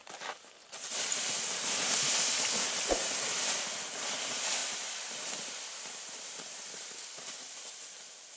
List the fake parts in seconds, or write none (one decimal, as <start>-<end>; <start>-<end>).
4.6-5.3; 6.0-7.8